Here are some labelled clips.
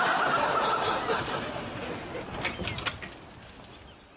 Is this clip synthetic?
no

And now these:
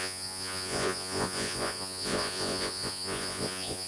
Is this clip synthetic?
yes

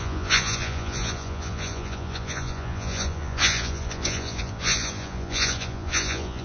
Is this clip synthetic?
yes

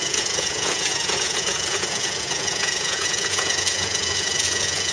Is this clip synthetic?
yes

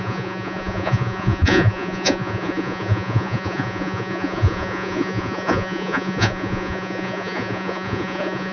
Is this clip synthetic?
yes